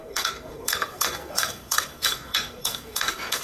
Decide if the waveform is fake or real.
fake